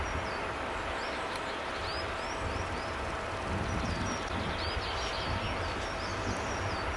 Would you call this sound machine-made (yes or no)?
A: no